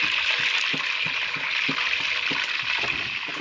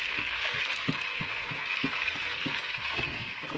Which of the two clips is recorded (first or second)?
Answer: first